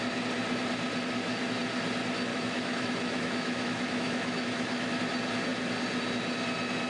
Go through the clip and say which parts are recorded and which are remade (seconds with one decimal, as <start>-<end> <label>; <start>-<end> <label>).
0.0-2.3 recorded; 2.3-5.0 remade; 5.0-6.9 recorded